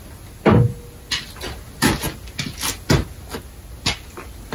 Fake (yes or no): no